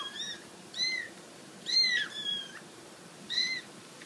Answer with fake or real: fake